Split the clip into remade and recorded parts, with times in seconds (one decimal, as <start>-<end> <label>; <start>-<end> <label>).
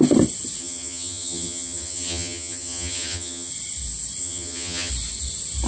0.0-0.6 recorded; 0.6-3.5 remade; 3.5-4.2 recorded; 4.2-4.9 remade; 4.9-5.7 recorded